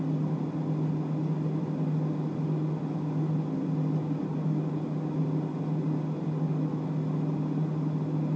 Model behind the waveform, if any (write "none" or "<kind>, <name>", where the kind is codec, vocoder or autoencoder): none